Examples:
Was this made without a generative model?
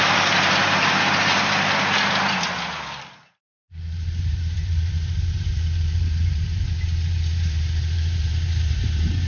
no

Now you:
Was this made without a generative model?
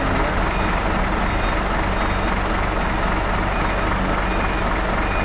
yes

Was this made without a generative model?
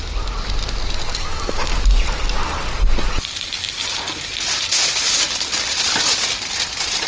yes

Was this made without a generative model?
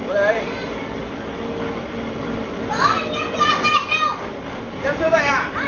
no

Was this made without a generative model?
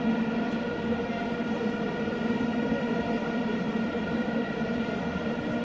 yes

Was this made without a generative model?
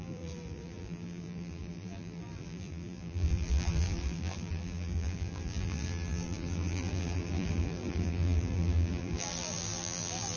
no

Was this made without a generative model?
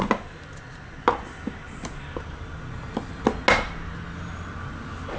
yes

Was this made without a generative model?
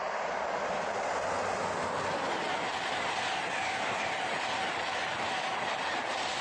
yes